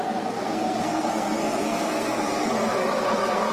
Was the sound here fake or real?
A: fake